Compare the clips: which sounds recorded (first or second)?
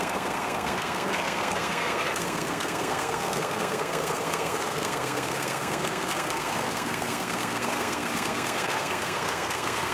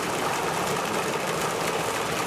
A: second